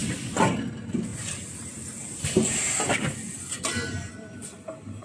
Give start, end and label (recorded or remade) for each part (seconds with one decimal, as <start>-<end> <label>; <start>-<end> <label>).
0.0-5.0 recorded